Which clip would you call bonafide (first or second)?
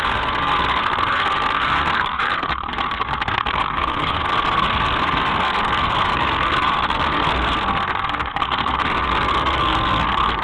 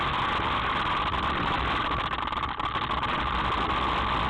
second